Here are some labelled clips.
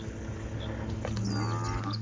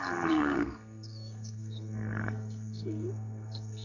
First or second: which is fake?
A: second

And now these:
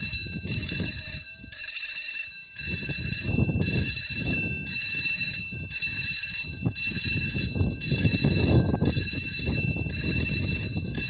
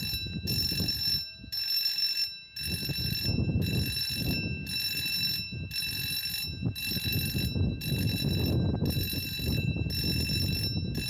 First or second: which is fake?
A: first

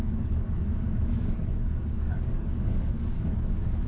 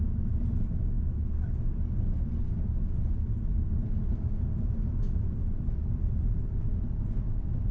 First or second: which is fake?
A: first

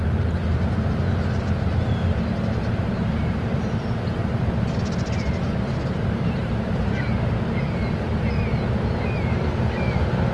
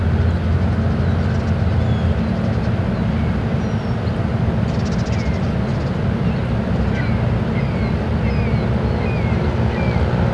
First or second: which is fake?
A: first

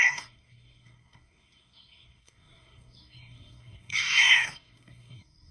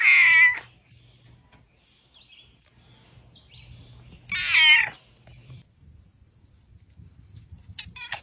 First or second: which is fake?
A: first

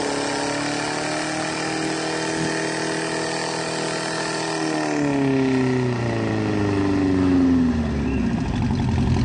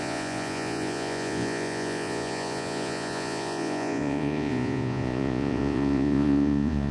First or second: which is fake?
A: second